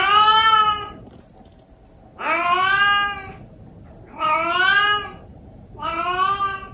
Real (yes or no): yes